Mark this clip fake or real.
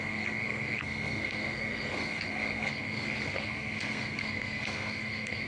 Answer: fake